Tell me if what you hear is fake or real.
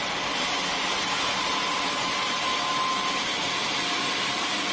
real